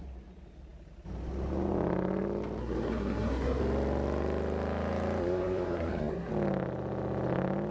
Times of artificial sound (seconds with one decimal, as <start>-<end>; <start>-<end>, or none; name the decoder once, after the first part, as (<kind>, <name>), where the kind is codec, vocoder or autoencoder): 2.6-3.6 (codec, SNAC); 5.2-6.3